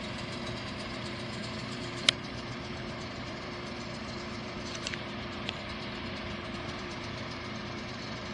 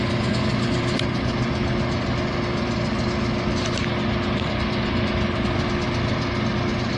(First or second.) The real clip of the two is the second